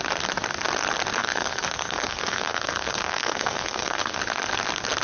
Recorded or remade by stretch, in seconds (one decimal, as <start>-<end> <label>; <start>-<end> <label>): 0.0-1.2 recorded; 1.2-4.2 remade; 4.2-5.0 recorded